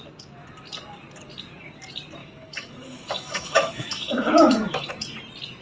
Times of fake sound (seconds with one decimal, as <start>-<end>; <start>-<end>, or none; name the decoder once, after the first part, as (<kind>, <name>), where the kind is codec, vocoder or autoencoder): 2.2-4.9 (autoencoder, DAC-VAE)